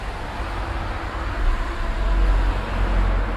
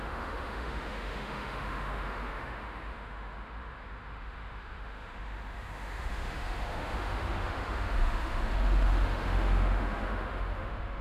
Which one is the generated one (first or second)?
second